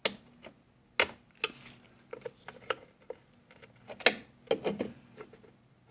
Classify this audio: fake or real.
real